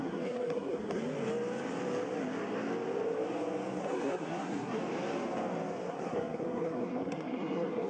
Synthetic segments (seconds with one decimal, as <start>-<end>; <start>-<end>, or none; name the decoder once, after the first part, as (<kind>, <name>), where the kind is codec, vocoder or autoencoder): 0.0-1.0 (codec, SNAC); 3.8-4.8; 5.9-7.9